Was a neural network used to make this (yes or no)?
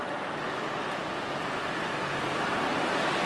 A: no